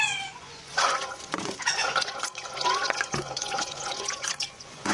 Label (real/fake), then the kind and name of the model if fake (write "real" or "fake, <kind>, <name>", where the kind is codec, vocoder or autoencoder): fake, vocoder, Vocos